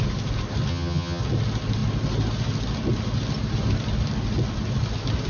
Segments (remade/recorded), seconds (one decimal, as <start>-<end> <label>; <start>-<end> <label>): 0.0-0.7 recorded; 0.7-1.2 remade; 1.2-5.3 recorded